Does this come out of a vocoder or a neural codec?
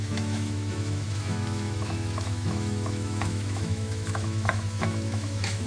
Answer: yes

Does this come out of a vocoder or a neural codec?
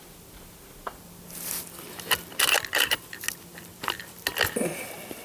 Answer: no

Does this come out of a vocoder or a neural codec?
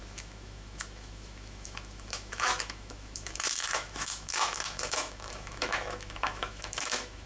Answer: yes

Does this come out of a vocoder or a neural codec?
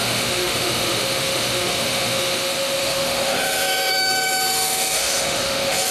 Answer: yes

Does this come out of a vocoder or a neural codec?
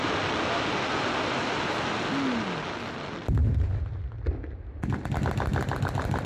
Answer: no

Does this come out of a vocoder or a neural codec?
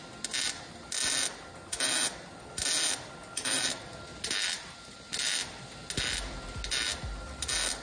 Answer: no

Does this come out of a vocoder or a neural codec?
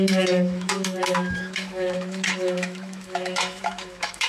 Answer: yes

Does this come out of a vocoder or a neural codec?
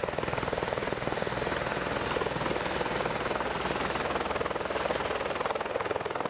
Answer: no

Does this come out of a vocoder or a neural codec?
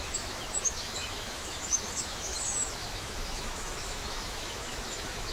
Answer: yes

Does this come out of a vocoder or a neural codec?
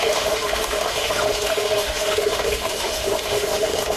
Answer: yes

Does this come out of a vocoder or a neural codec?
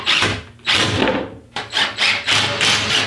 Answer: no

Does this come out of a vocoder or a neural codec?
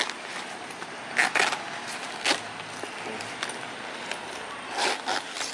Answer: no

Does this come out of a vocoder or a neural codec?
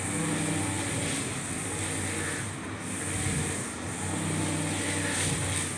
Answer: no